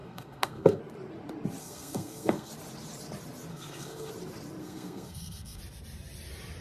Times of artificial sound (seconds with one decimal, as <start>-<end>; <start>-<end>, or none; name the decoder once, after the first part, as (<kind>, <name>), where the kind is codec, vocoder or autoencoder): 0.0-0.8 (codec, SNAC); 1.6-2.5; 3.5-4.1; 4.6-5.6